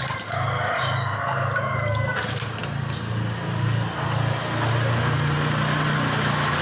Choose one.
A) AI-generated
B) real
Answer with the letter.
B